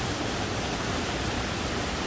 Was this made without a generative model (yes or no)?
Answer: yes